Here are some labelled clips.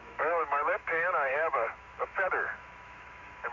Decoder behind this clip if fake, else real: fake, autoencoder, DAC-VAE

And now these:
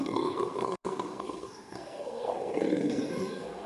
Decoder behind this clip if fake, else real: fake, codec, SNAC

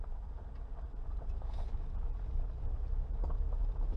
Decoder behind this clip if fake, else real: real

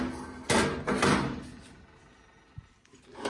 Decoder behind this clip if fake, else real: real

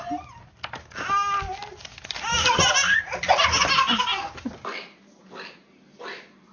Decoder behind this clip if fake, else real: real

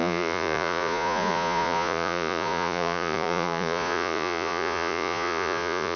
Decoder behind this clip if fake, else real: fake, vocoder, Vocos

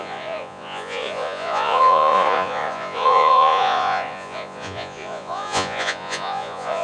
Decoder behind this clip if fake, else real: fake, vocoder, Vocos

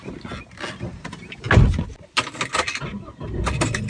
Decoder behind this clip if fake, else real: real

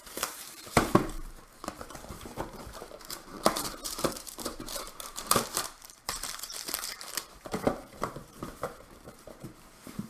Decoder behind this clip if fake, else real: fake, vocoder, BigVGAN v2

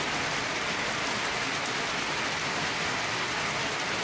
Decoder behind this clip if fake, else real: real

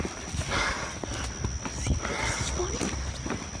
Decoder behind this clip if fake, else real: real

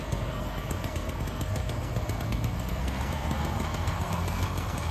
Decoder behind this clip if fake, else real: fake, codec, SNAC